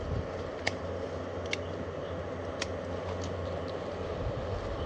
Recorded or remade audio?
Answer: recorded